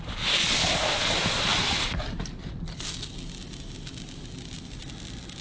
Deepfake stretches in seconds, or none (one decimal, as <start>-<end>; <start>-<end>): none